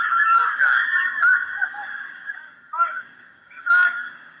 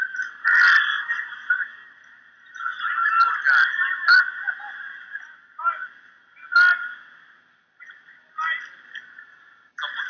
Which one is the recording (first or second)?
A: second